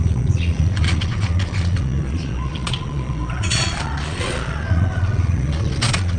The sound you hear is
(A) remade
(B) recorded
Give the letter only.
A